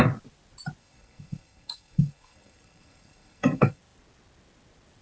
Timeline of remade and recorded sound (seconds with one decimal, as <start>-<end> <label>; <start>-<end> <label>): 0.0-0.8 recorded; 0.8-3.8 remade; 3.8-5.0 recorded